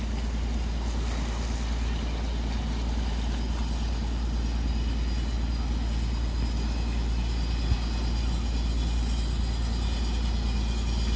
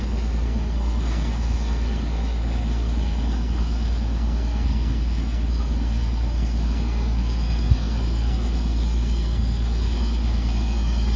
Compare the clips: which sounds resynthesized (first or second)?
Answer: second